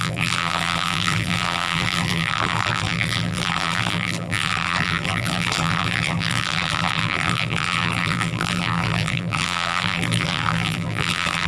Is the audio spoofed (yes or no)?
yes